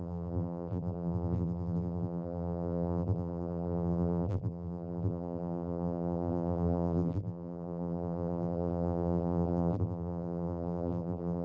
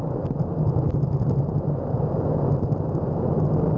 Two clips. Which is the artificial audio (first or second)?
first